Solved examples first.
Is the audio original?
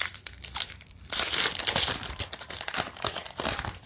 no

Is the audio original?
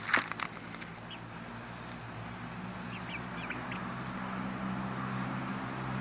yes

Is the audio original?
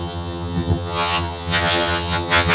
no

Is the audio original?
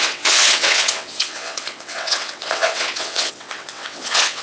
no